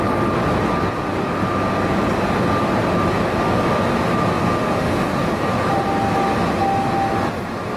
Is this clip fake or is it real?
real